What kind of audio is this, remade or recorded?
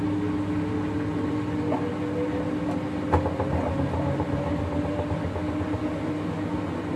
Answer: recorded